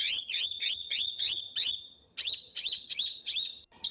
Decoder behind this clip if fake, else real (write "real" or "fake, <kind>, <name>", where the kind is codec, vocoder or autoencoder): fake, vocoder, HiFi-GAN